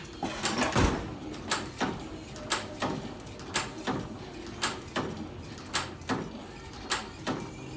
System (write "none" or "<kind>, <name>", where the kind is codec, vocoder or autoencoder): none